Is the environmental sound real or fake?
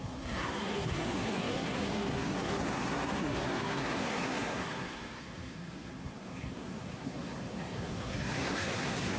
fake